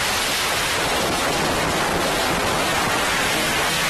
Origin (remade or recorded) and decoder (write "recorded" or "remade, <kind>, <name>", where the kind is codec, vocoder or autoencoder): recorded